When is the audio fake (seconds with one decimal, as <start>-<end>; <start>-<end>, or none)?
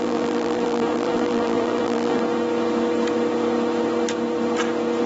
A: 0.0-2.2